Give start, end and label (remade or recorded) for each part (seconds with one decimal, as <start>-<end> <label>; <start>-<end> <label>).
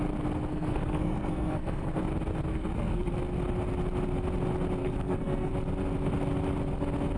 0.0-0.5 recorded; 0.5-2.0 remade; 2.0-2.5 recorded; 2.5-3.1 remade; 3.1-4.8 recorded; 4.8-5.5 remade; 5.5-7.2 recorded